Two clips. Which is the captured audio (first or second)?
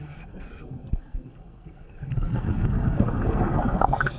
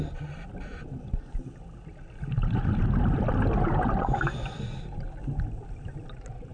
second